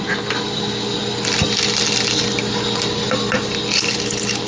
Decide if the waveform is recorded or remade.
recorded